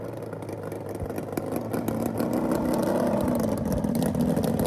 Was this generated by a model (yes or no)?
no